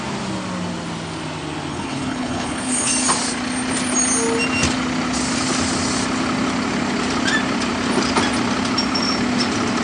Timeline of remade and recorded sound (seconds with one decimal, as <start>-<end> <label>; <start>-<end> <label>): 0.0-1.7 recorded; 1.7-2.9 remade; 2.9-9.8 recorded